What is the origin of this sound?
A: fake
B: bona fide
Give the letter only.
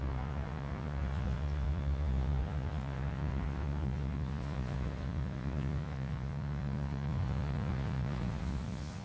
A